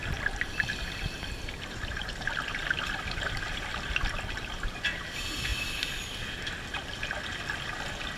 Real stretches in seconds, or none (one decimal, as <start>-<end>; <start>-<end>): 0.0-8.2